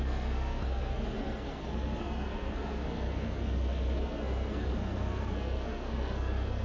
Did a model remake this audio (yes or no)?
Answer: yes